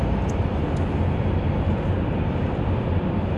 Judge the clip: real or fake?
real